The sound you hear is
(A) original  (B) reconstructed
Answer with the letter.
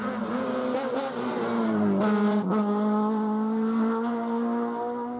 A